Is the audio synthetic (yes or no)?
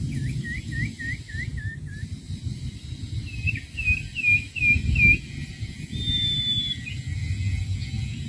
no